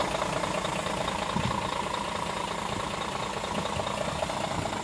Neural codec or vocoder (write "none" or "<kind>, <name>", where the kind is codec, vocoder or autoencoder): none